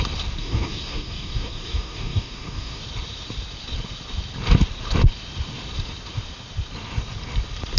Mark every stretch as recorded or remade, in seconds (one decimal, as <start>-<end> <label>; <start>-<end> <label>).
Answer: 0.0-0.4 recorded; 0.4-2.8 remade; 2.8-7.8 recorded